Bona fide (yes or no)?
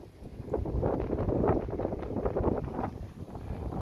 yes